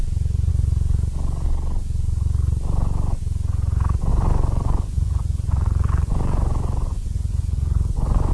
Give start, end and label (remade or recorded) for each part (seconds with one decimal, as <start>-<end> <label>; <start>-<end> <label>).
0.0-4.1 recorded; 4.1-8.3 remade